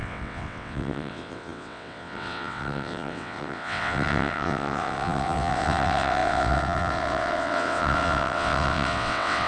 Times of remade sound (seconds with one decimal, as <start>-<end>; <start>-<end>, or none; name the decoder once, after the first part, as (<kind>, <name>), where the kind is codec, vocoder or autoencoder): 0.0-9.5 (vocoder, WaveNeXt)